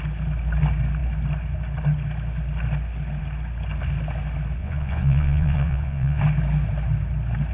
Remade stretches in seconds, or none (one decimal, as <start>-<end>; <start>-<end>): 4.6-6.2

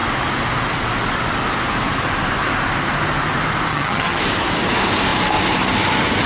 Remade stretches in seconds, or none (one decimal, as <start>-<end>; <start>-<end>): 3.7-4.2

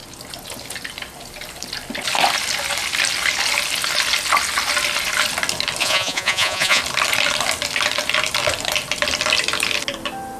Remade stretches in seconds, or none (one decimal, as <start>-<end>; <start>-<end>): 5.8-6.8

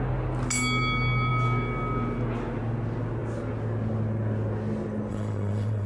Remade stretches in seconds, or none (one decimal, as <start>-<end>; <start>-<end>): 5.1-5.9

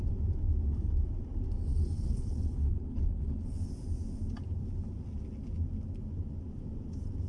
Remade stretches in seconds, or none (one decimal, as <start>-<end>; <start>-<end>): 1.7-3.7